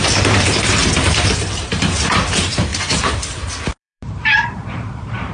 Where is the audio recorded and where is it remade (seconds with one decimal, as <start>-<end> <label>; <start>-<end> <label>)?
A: 0.0-0.8 remade; 0.8-1.7 recorded; 1.7-2.7 remade; 2.7-3.8 recorded; 3.8-5.3 remade